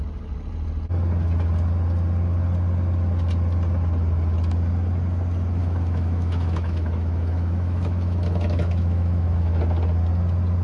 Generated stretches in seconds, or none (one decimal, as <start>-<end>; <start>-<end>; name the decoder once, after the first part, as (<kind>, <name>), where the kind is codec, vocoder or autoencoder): 5.6-9.6 (autoencoder, DAC-VAE)